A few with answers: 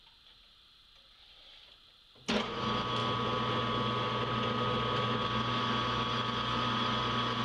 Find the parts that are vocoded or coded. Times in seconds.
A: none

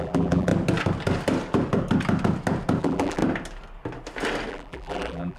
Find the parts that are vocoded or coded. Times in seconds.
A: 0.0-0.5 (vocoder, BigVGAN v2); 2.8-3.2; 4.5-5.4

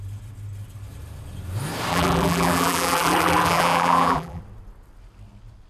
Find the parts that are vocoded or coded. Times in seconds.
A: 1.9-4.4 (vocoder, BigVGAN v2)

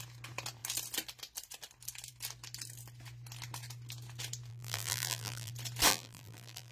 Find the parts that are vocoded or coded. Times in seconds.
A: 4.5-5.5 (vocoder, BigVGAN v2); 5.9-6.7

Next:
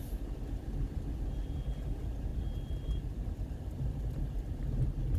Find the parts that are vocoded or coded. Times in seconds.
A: 2.3-4.5 (vocoder, BigVGAN v2)

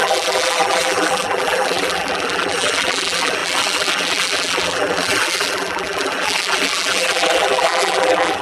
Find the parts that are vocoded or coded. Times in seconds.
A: 0.0-8.4 (vocoder, BigVGAN v2)